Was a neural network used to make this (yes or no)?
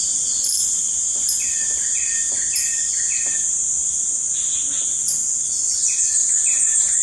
no